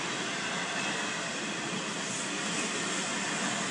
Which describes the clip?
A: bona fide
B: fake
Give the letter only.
A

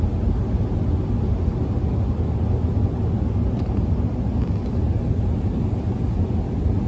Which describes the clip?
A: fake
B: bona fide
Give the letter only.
B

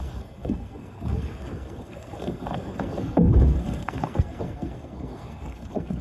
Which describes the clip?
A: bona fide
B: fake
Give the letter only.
B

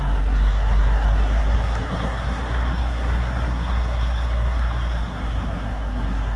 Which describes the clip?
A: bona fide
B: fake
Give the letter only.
B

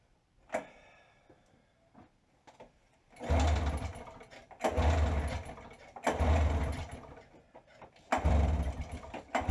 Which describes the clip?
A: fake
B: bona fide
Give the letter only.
B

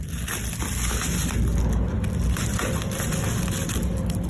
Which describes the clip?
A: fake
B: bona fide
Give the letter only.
B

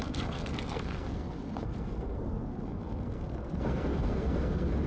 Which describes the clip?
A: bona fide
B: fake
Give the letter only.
B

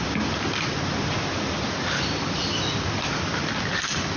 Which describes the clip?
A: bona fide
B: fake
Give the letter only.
A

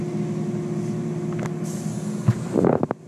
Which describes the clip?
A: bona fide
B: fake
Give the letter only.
A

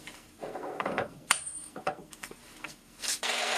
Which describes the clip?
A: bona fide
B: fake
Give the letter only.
B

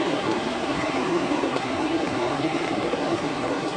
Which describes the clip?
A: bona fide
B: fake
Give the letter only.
B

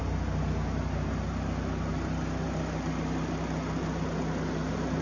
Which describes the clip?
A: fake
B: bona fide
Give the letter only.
B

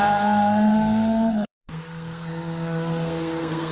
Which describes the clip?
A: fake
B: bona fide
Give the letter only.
A